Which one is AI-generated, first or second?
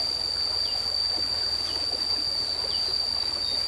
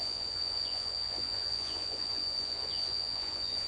second